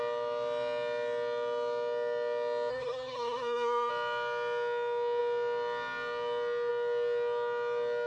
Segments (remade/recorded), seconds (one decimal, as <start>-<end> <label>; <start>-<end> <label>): 0.0-2.7 recorded; 2.7-3.9 remade; 3.9-8.1 recorded